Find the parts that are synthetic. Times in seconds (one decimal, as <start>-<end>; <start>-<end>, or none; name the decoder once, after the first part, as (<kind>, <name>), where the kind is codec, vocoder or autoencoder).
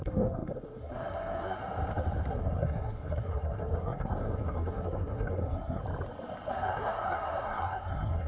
0.0-1.6 (codec, SNAC); 2.3-5.8; 6.5-8.3